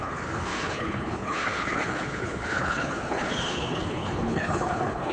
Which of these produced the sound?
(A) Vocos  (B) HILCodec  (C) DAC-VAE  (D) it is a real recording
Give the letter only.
B